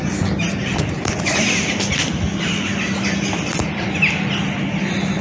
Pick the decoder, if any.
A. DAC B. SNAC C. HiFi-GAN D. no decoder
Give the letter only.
D